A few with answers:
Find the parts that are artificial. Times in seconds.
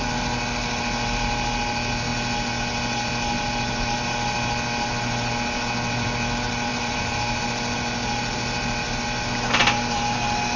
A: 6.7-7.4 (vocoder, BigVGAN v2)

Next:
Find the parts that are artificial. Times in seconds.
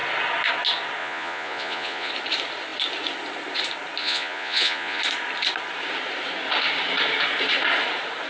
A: 1.0-2.1 (vocoder, Vocos); 4.0-5.0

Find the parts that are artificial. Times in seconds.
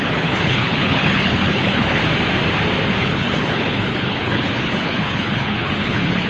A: 0.0-2.0 (codec, HILCodec); 3.0-6.3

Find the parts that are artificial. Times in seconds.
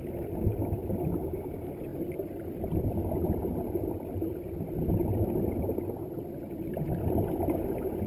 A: 1.9-4.5 (vocoder, BigVGAN v2); 5.1-5.7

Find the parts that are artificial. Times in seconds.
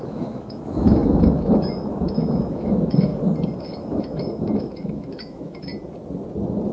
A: 0.0-3.1 (autoencoder, DAC-VAE); 3.6-5.7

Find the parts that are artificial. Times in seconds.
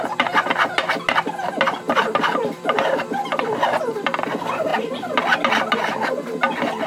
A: none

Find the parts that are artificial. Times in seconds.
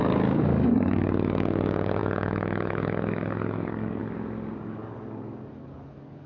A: 0.0-4.0 (codec, DAC); 4.6-6.3